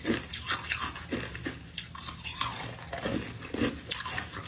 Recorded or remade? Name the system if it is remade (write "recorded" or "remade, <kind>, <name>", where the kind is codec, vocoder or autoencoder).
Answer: recorded